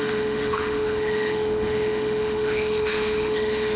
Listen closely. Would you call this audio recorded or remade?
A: remade